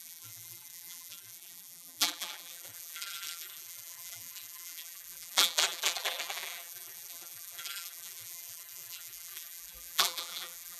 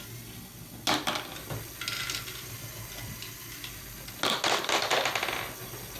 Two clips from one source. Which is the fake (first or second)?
first